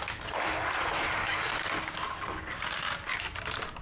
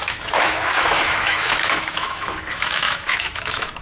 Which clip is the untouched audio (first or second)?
first